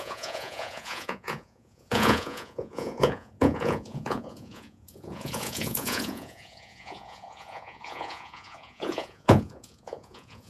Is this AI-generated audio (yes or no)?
yes